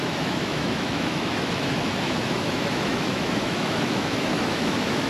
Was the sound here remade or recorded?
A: remade